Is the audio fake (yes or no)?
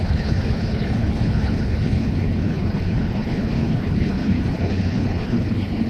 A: yes